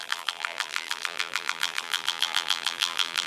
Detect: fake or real fake